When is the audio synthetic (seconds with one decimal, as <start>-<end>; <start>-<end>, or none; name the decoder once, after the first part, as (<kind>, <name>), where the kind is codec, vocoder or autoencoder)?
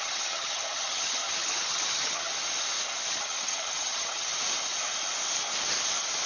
0.0-2.3 (vocoder, HiFi-GAN); 3.1-4.3